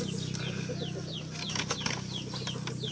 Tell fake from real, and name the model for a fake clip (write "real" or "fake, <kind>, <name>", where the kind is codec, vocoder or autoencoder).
real